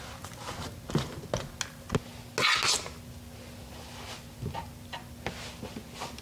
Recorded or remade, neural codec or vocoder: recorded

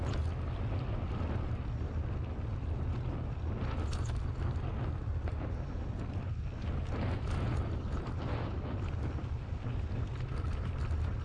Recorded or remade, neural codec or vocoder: recorded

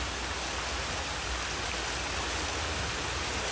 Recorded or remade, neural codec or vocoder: recorded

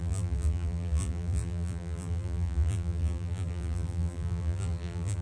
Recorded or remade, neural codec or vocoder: remade, vocoder, BigVGAN v2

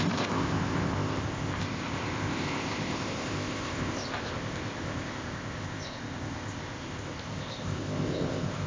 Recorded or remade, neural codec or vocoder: remade, codec, ZipCodec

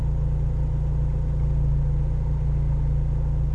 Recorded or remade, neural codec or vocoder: recorded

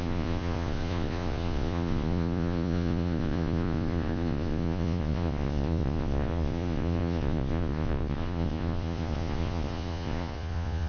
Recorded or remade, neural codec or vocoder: remade, vocoder, Vocos